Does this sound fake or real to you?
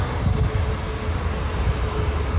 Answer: real